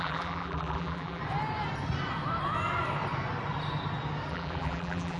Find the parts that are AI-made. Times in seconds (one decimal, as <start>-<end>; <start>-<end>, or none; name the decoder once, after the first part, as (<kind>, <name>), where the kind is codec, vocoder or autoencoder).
0.0-1.2 (vocoder, BigVGAN v2); 4.3-5.2